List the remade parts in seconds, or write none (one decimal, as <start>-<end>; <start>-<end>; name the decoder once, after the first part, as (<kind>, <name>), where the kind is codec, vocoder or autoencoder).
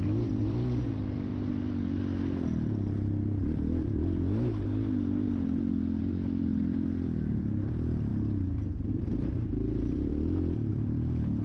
0.0-1.3 (vocoder, BigVGAN v2); 6.0-8.1; 8.9-10.1; 10.7-11.4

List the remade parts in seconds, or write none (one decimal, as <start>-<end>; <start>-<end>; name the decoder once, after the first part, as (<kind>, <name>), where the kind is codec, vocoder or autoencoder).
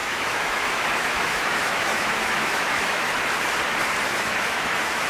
0.0-3.1 (autoencoder, DAC-VAE); 4.1-5.1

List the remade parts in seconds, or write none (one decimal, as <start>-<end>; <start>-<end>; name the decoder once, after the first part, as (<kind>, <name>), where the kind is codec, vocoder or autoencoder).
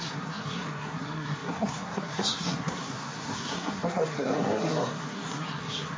0.0-6.0 (codec, SNAC)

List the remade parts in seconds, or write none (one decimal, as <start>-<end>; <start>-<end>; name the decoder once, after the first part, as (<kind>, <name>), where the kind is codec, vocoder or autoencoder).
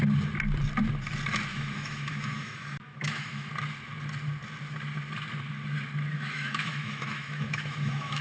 1.5-3.5 (autoencoder, DAC-VAE); 6.1-8.2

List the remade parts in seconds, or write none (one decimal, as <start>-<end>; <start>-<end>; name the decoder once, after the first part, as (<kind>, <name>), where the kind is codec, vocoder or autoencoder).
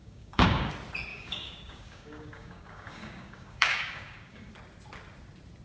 0.0-0.7 (codec, DAC); 1.1-4.5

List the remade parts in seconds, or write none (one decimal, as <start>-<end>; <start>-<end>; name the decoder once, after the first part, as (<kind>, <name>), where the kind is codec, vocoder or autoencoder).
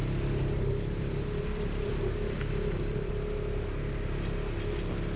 0.0-3.1 (vocoder, BigVGAN v2)